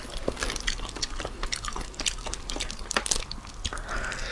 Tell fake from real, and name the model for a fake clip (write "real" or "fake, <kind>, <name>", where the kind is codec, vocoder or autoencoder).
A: real